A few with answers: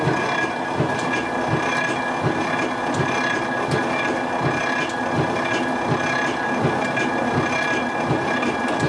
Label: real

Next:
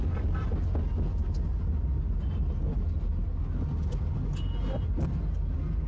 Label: real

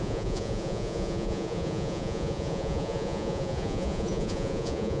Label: fake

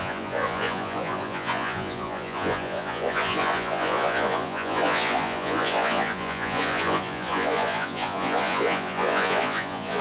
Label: fake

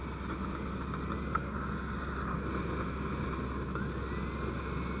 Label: real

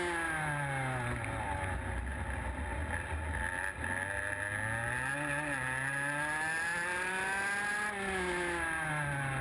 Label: real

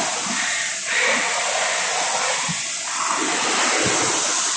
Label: real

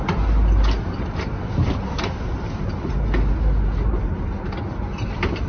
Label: real